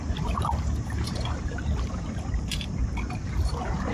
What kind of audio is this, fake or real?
fake